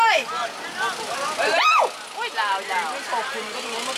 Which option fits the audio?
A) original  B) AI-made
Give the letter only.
A